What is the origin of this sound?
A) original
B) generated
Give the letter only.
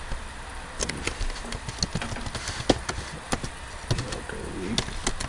A